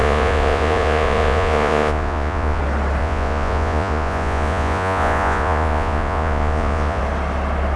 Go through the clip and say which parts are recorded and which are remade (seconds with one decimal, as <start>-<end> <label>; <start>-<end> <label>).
0.0-2.6 remade; 2.6-3.0 recorded; 3.0-7.0 remade; 7.0-7.8 recorded

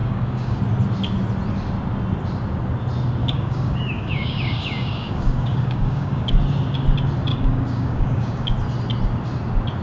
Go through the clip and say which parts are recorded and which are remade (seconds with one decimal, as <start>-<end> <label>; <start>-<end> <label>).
0.0-0.6 remade; 0.6-3.2 recorded; 3.2-6.3 remade; 6.3-7.3 recorded; 7.3-8.5 remade; 8.5-9.8 recorded

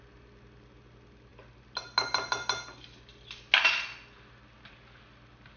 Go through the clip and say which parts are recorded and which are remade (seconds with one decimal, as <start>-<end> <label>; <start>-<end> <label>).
0.0-5.6 recorded

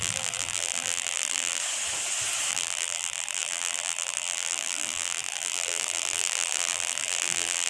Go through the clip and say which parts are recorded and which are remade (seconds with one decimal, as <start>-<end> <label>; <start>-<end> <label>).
0.0-1.6 remade; 1.6-2.5 recorded; 2.5-7.7 remade

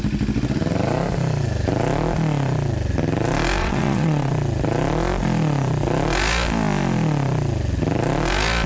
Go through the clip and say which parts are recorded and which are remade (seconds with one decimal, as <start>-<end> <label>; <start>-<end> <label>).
0.0-3.6 recorded; 3.6-4.3 remade; 4.3-8.7 recorded

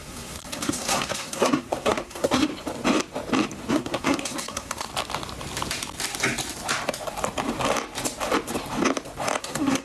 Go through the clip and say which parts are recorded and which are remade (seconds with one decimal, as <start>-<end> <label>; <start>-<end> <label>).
0.0-2.5 remade; 2.5-3.7 recorded; 3.7-4.9 remade; 4.9-9.4 recorded; 9.4-9.8 remade

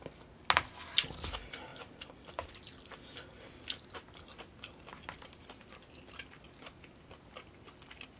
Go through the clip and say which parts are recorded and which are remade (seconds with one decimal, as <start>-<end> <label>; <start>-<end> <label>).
0.0-8.2 recorded